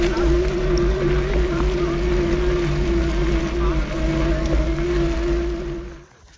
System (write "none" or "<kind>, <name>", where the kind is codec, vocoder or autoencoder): none